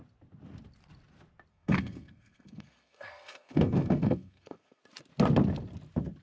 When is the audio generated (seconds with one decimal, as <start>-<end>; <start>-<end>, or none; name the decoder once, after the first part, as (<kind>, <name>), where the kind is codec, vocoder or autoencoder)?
1.5-4.8 (codec, SNAC)